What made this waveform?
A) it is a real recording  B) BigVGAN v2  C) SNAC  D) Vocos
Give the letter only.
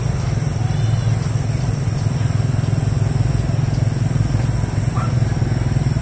A